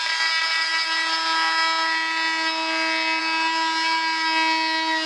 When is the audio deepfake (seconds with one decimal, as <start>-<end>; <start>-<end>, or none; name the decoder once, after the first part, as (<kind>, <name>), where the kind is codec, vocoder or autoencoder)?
none